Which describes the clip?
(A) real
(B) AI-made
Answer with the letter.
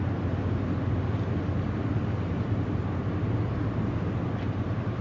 A